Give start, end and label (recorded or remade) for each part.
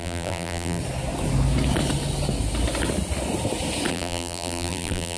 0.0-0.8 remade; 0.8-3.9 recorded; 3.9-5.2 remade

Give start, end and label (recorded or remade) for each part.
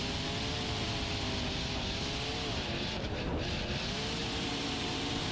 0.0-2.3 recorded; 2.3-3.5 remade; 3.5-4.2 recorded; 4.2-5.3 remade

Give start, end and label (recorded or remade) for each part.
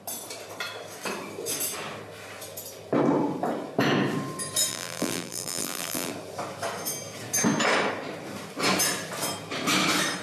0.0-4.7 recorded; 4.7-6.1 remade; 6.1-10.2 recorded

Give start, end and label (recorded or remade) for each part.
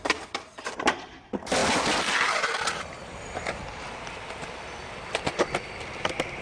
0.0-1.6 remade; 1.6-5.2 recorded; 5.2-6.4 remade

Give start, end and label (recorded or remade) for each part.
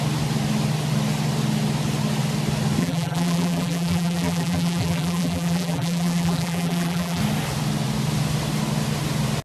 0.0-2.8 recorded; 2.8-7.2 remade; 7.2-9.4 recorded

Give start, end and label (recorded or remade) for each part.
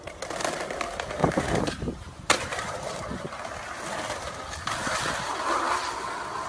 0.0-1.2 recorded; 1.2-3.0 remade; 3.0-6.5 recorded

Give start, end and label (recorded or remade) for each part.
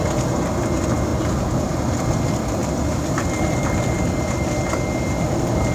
0.0-2.6 recorded; 2.6-4.1 remade; 4.1-5.7 recorded